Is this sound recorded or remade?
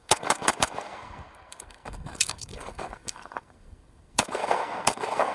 remade